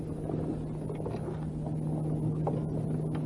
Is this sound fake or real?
real